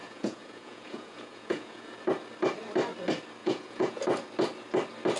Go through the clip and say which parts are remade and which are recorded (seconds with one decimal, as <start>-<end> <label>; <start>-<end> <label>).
0.0-2.0 remade; 2.0-3.4 recorded; 3.4-4.0 remade; 4.0-5.2 recorded